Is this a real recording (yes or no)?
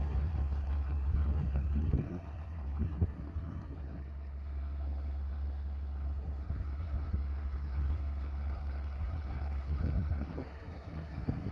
no